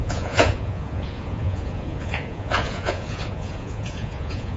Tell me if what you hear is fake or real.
fake